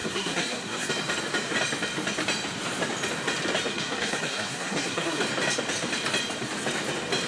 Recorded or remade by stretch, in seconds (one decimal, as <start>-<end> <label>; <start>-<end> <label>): 0.0-0.9 remade; 0.9-3.7 recorded; 3.7-5.2 remade; 5.2-7.3 recorded